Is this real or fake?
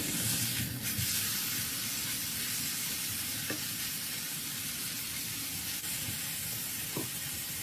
fake